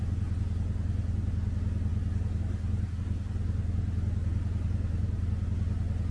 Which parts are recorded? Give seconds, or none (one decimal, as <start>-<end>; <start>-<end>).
0.0-6.1

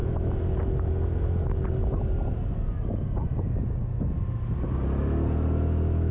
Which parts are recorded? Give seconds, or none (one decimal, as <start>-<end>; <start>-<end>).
0.0-6.1

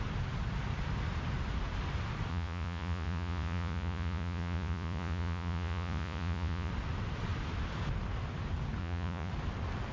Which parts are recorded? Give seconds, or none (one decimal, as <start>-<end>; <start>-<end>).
0.0-2.3; 6.7-8.8; 9.3-9.9

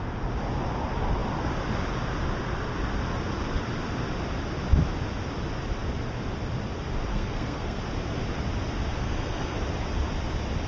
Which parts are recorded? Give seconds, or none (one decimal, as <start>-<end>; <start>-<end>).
0.0-7.1; 7.8-9.0; 9.6-10.7

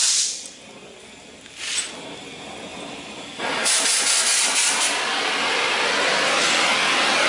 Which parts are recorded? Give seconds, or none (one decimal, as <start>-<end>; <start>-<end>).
0.6-2.7; 3.4-7.3